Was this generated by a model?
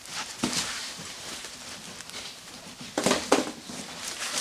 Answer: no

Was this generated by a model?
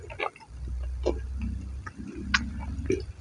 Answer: no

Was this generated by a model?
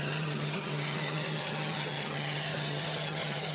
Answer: yes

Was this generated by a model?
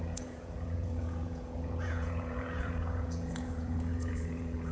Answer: yes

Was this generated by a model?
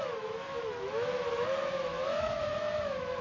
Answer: yes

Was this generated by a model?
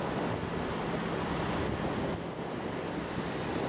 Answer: no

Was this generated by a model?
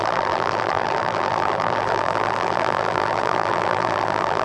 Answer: yes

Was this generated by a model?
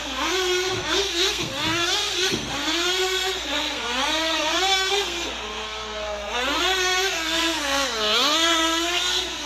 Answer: yes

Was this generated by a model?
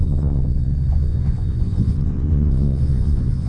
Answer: yes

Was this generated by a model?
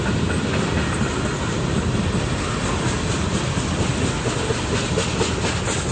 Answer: no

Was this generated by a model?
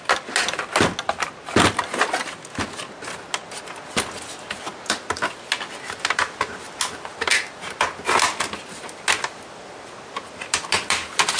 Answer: no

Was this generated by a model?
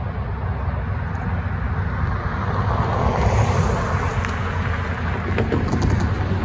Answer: no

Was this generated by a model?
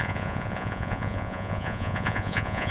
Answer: yes